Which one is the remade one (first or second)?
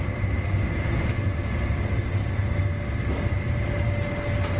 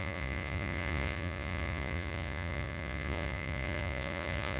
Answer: second